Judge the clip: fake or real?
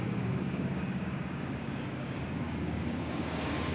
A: fake